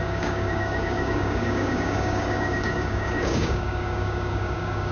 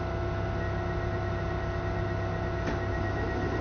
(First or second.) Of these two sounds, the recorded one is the second